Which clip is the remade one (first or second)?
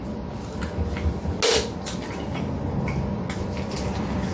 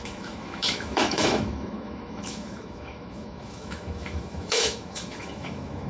second